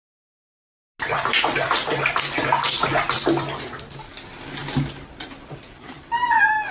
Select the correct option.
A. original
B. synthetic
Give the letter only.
A